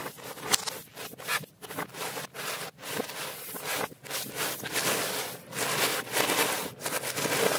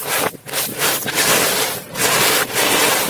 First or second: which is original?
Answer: first